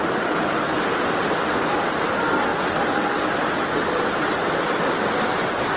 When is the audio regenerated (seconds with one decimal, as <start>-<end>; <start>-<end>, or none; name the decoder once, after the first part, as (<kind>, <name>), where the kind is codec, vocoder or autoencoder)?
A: none